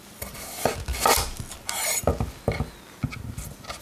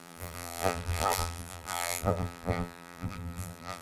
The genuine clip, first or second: first